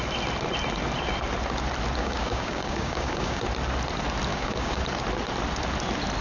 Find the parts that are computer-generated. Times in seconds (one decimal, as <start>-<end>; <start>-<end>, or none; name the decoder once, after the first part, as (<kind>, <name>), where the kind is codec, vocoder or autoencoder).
2.0-3.4 (codec, DAC); 4.3-4.8